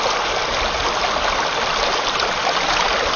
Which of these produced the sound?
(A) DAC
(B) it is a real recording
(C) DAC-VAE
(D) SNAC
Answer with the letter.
B